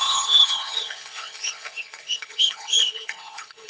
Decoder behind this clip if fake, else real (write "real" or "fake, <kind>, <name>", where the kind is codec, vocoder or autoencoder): fake, codec, HILCodec